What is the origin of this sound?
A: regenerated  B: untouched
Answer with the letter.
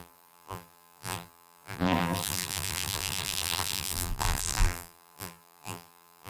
A